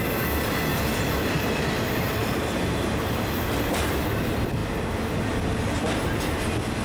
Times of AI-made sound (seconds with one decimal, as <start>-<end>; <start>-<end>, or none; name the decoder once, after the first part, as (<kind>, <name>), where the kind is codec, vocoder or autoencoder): 0.7-4.1 (vocoder, BigVGAN v2)